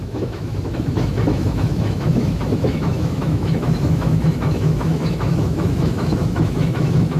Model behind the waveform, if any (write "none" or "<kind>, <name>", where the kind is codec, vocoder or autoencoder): autoencoder, DAC-VAE